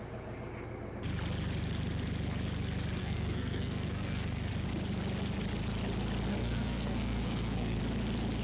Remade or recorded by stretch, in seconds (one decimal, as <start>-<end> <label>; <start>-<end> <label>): 0.0-3.0 recorded; 3.0-4.5 remade; 4.5-6.3 recorded; 6.3-7.8 remade; 7.8-8.4 recorded